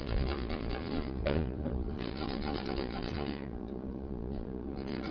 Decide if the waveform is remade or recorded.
remade